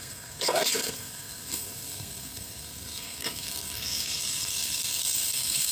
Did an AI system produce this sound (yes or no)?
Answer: yes